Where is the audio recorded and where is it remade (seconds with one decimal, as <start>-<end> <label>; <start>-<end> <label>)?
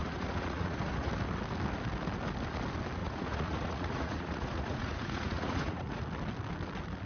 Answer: 0.0-1.1 remade; 1.1-3.0 recorded; 3.0-6.0 remade; 6.0-7.1 recorded